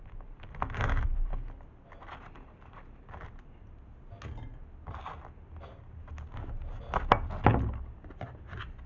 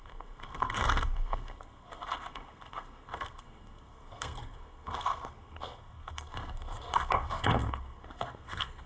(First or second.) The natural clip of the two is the first